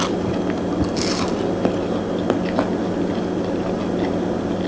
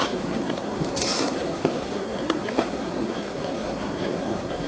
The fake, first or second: second